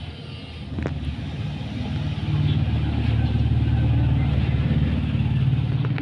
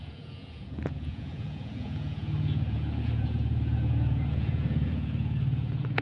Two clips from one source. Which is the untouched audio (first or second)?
first